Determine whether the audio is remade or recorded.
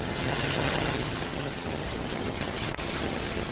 remade